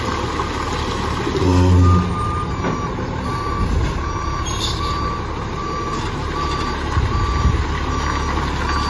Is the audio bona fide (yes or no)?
yes